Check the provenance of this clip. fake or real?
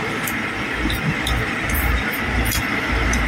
fake